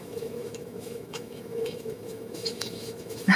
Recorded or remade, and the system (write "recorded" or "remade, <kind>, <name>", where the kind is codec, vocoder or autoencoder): remade, autoencoder, DAC-VAE